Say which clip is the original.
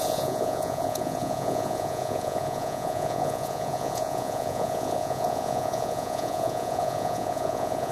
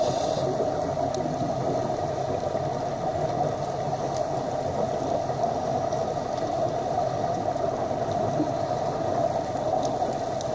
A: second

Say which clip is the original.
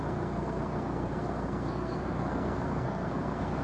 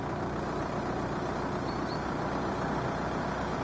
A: second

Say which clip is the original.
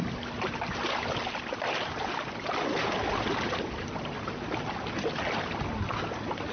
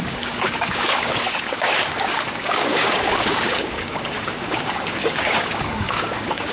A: first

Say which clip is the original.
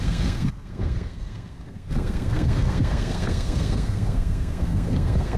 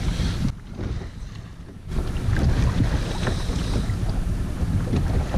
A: second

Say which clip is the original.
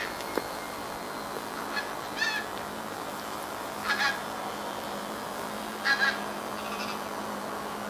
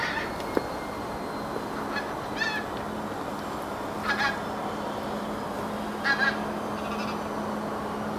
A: second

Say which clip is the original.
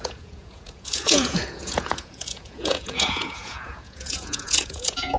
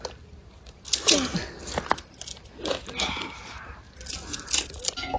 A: second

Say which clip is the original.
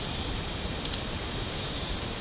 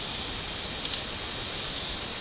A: second